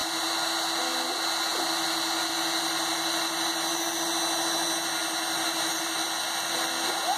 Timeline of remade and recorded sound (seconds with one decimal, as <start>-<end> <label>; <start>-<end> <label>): 0.0-7.2 recorded